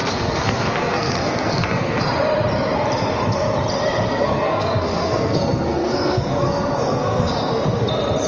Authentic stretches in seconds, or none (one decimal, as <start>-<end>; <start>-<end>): 2.0-4.1; 7.5-8.3